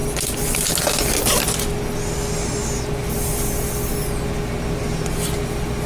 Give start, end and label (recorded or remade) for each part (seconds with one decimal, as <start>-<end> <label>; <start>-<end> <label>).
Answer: 0.0-5.9 recorded